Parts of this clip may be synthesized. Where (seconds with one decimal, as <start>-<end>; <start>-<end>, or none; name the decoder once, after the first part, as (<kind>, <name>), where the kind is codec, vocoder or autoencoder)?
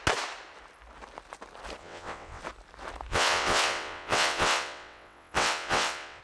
1.8-2.4 (vocoder, WaveNeXt); 3.1-6.2